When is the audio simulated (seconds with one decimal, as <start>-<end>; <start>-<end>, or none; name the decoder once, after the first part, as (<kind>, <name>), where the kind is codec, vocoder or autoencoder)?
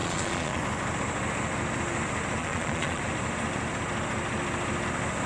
0.0-0.6 (vocoder, Vocos); 2.4-3.0